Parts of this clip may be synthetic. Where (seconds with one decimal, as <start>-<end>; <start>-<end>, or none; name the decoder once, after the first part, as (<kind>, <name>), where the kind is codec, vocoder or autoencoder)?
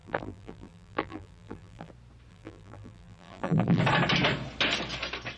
0.0-1.9 (vocoder, BigVGAN v2); 2.3-3.8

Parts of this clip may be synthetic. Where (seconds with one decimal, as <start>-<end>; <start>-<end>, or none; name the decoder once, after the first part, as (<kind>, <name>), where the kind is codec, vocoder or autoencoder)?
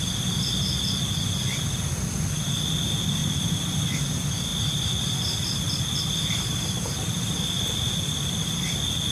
4.5-7.9 (vocoder, BigVGAN v2)